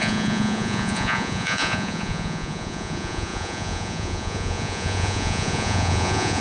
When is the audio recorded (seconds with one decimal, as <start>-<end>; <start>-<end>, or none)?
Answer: none

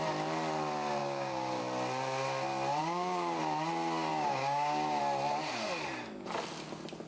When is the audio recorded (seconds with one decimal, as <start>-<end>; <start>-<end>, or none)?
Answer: 0.0-1.0; 1.6-2.8; 3.4-4.1; 5.0-7.1